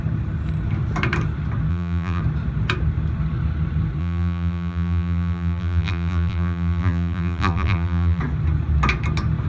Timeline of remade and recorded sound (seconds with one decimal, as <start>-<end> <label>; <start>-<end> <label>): 0.0-1.7 recorded; 1.7-2.2 remade; 2.2-4.0 recorded; 4.0-8.2 remade; 8.2-9.5 recorded